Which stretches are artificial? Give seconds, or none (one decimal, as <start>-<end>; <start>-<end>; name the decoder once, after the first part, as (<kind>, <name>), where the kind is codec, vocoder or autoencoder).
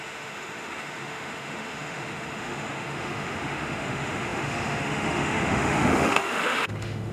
0.0-7.1 (autoencoder, DAC-VAE)